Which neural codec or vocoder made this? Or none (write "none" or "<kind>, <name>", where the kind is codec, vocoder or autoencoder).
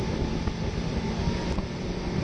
none